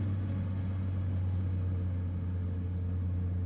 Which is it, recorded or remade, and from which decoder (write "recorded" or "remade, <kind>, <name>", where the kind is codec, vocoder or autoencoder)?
recorded